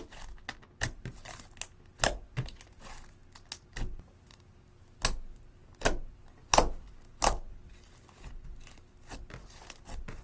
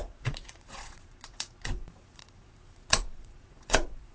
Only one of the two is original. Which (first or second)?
first